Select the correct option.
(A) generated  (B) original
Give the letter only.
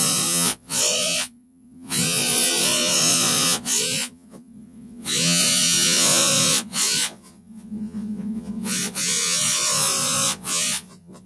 A